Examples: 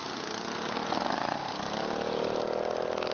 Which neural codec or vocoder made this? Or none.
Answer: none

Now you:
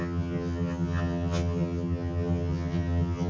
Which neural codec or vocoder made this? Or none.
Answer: vocoder, HiFi-GAN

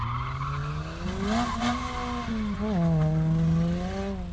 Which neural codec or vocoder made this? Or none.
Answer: none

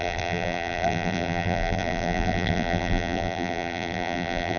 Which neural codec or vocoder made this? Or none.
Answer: vocoder, BigVGAN v2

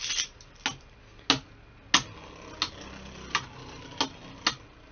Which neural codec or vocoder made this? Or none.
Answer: none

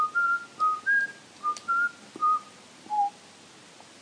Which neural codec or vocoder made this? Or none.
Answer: none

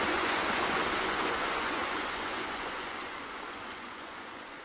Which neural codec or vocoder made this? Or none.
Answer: vocoder, Vocos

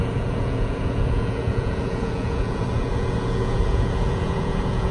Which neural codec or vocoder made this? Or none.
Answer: vocoder, Vocos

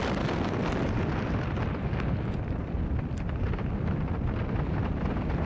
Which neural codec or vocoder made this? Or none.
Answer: vocoder, BigVGAN v2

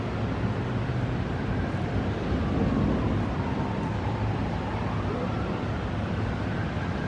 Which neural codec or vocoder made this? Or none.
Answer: none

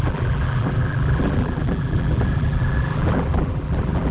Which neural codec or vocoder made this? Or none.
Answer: vocoder, BigVGAN v2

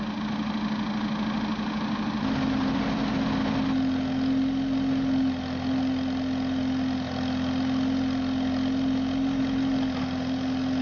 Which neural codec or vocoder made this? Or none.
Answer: none